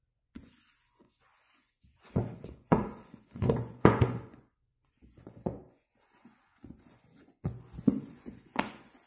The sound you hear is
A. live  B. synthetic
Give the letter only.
B